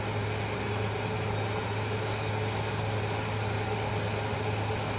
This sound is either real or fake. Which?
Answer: real